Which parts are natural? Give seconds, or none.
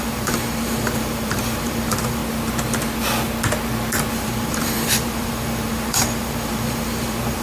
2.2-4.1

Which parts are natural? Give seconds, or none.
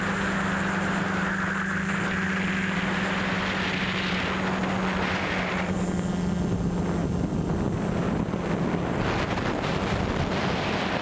0.0-11.0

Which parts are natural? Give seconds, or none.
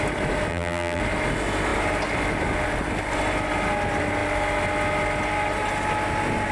0.0-0.5; 1.0-6.5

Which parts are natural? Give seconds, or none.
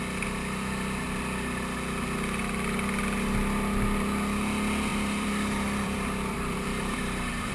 0.0-4.9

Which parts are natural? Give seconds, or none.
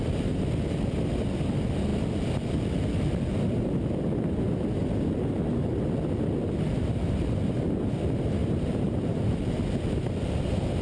0.0-8.4; 9.3-10.8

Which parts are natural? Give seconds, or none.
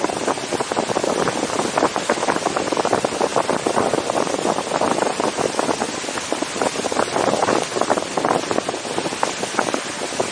0.0-10.3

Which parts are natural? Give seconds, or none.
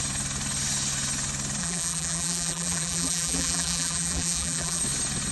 0.0-1.6; 4.8-5.3